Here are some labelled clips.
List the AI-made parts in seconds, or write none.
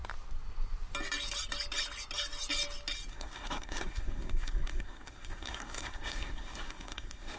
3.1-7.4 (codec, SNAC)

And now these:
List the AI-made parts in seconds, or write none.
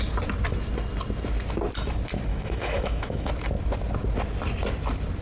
2.3-3.3 (autoencoder, DAC-VAE)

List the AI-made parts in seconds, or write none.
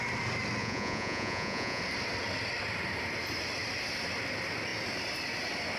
0.6-1.8 (vocoder, Vocos)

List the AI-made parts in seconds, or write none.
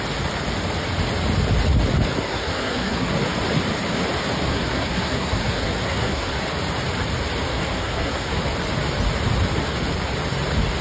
2.3-3.1 (codec, SNAC); 4.5-6.4; 7.5-8.4